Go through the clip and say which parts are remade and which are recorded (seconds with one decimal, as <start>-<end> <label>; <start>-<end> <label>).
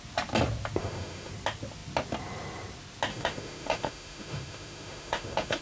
0.0-0.8 recorded; 0.8-1.3 remade; 1.3-3.1 recorded; 3.1-5.6 remade